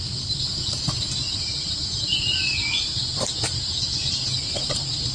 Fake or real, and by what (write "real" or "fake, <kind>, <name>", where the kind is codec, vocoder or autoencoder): real